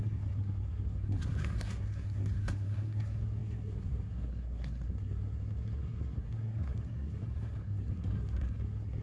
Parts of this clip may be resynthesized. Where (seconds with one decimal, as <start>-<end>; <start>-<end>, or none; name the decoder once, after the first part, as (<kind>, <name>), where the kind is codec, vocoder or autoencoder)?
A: 0.0-9.0 (codec, SNAC)

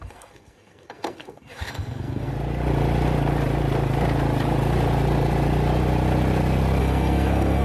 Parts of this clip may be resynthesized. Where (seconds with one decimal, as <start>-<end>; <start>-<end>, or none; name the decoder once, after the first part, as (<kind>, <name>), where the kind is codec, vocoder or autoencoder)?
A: 0.0-2.3 (codec, SNAC); 6.8-7.6

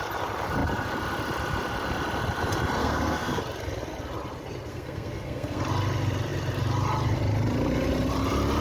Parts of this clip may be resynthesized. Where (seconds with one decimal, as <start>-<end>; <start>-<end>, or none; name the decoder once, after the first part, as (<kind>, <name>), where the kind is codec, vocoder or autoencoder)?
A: 2.8-3.4 (codec, SNAC); 4.7-5.6

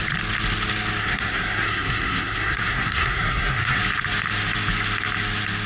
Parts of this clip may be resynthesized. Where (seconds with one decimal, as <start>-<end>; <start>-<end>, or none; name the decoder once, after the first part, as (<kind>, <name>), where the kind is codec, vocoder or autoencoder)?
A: 1.0-3.8 (codec, SNAC)

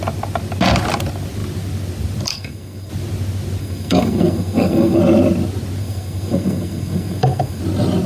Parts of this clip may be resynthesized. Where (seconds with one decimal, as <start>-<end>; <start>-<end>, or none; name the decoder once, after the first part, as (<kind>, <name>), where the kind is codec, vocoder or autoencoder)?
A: 2.3-2.9 (codec, SNAC); 3.6-5.0; 5.8-7.6

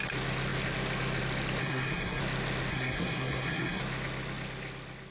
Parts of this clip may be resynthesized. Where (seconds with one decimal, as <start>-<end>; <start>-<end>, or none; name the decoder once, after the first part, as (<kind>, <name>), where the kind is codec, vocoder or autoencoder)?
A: 1.6-2.2 (codec, SNAC); 2.7-3.8

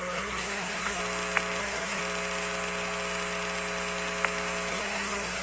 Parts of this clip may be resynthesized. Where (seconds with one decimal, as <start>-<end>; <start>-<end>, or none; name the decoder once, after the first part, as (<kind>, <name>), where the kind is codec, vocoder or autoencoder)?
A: 0.0-1.0 (codec, SNAC); 1.6-2.0; 4.7-5.4

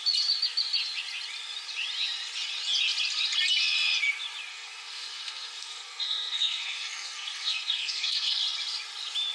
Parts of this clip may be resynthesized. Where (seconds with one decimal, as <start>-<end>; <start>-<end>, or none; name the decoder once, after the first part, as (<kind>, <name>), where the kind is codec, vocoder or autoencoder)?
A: 4.5-8.4 (codec, SNAC)